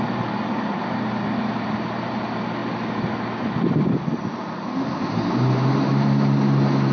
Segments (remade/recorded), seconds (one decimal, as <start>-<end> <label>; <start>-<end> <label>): 0.0-6.9 recorded